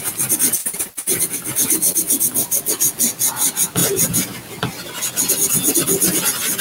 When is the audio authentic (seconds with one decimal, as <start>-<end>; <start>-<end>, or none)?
0.0-6.6

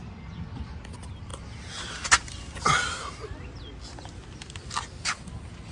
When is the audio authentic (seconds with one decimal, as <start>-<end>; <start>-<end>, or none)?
0.0-5.7

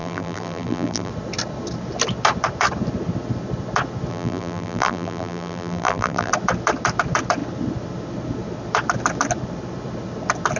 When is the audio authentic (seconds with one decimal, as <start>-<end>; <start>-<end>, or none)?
1.1-4.1; 6.3-10.6

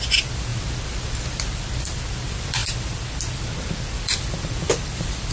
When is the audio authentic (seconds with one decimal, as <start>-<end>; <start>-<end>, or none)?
0.5-1.4

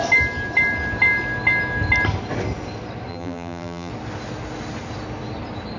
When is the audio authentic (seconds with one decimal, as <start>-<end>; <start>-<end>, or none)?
0.0-3.1; 3.9-5.8

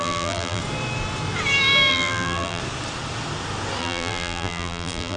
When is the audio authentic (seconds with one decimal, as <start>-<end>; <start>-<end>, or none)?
0.6-1.9; 2.6-3.8

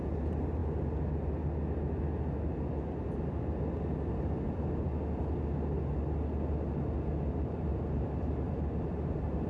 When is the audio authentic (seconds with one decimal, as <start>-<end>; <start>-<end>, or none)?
0.6-4.1; 4.9-7.3

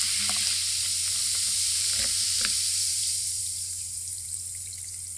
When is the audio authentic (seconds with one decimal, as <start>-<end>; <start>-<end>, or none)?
0.0-1.2; 4.3-5.2